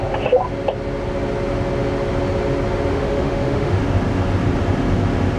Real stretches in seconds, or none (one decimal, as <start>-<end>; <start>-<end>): 0.0-2.9; 3.8-5.4